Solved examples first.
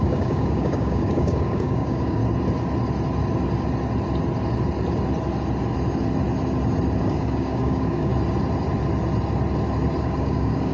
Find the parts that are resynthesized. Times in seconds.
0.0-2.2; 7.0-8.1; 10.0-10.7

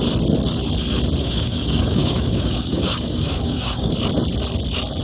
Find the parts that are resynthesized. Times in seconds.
1.2-3.9

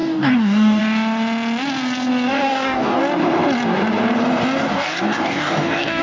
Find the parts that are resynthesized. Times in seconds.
0.0-0.8; 2.3-3.0; 4.7-6.0

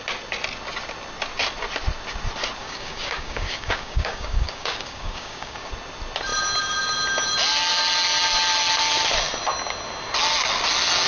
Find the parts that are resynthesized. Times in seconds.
2.6-5.7